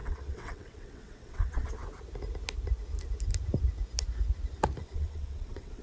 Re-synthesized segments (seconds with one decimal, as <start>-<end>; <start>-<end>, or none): 0.0-1.7; 4.8-5.8